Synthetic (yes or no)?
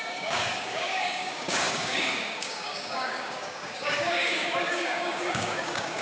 yes